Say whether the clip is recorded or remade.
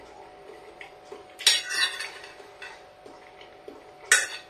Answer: recorded